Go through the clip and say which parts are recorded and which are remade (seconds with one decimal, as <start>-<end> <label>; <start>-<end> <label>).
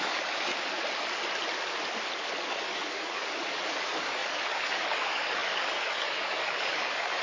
0.0-0.5 remade; 0.5-2.4 recorded; 2.4-7.2 remade